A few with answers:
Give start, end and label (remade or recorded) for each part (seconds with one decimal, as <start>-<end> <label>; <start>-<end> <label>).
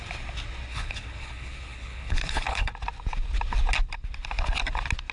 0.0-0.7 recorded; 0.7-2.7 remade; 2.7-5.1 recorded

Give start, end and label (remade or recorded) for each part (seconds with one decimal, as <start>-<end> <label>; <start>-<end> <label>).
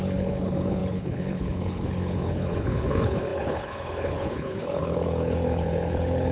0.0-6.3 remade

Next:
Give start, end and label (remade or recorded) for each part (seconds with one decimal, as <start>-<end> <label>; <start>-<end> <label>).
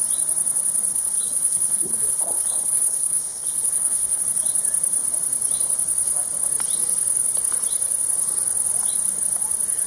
0.0-0.9 recorded; 0.9-4.2 remade; 4.2-9.9 recorded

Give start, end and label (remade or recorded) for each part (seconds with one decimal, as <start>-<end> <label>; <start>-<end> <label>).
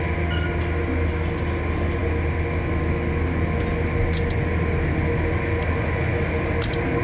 0.0-7.0 recorded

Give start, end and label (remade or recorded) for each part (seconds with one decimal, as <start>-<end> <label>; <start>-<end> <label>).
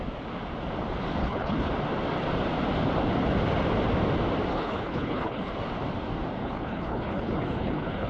0.0-1.2 recorded; 1.2-1.7 remade; 1.7-4.5 recorded; 4.5-5.5 remade; 5.5-6.4 recorded; 6.4-8.1 remade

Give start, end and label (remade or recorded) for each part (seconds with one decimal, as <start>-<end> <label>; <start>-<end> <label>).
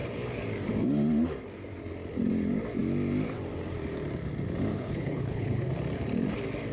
0.0-4.7 recorded; 4.7-5.7 remade; 5.7-6.7 recorded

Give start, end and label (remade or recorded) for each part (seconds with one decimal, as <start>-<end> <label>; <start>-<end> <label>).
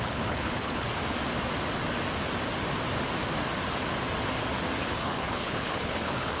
0.0-1.0 remade; 1.0-4.8 recorded; 4.8-6.4 remade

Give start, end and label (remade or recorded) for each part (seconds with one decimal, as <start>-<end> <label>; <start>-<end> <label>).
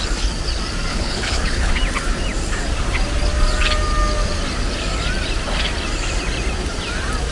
0.0-0.9 recorded; 0.9-1.7 remade; 1.7-7.3 recorded